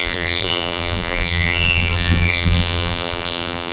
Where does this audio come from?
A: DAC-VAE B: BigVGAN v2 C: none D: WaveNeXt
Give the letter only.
B